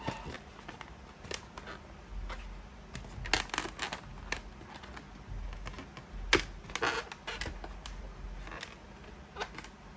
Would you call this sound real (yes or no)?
yes